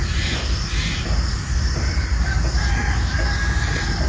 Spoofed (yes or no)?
no